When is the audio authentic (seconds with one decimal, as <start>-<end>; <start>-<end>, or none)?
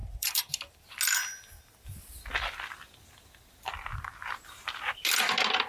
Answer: 0.5-5.7